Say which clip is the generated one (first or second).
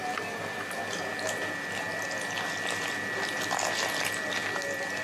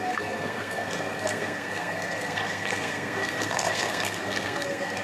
second